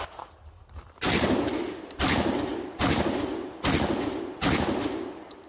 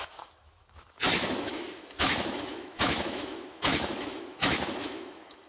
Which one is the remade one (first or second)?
second